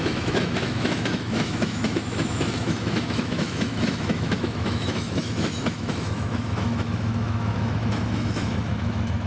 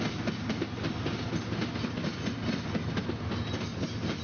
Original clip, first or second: second